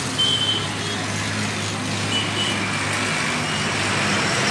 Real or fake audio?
real